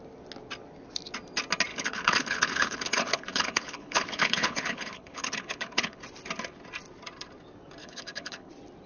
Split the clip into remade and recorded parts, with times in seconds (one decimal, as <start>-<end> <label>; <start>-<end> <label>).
0.0-1.7 recorded; 1.7-6.0 remade; 6.0-7.8 recorded; 7.8-8.5 remade; 8.5-8.9 recorded